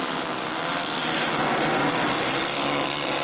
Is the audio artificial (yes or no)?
no